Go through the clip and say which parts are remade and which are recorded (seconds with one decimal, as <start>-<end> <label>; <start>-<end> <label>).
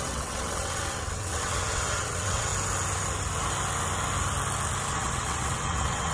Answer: 0.0-2.5 remade; 2.5-4.9 recorded; 4.9-6.1 remade